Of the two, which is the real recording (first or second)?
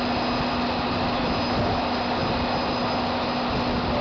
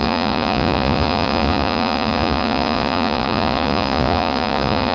first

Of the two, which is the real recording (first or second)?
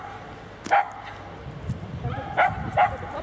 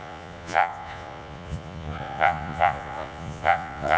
first